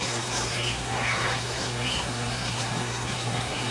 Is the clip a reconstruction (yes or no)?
yes